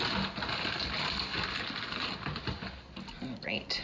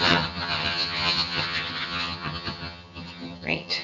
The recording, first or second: first